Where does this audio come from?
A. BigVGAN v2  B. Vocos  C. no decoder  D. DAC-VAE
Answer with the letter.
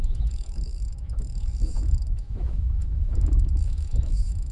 D